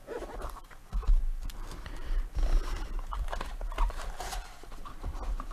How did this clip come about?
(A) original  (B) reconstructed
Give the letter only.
B